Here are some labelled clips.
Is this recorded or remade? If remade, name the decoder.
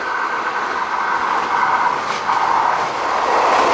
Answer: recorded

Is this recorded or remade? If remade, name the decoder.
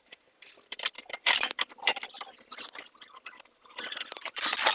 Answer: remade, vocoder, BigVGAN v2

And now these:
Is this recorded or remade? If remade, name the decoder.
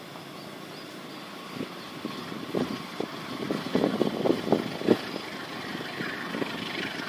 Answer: recorded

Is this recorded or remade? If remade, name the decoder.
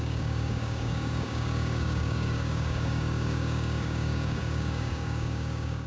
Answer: remade, codec, DAC